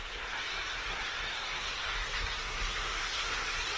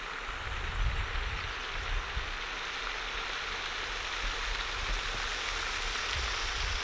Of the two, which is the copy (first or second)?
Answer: first